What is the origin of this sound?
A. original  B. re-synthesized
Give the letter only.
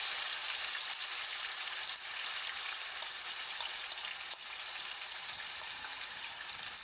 A